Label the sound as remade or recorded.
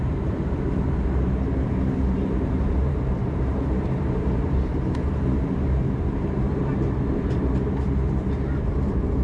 remade